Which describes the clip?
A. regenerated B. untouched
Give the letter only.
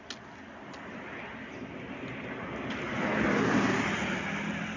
B